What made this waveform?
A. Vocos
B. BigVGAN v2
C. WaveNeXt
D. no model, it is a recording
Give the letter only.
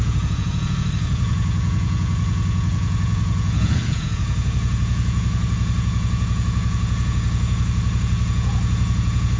A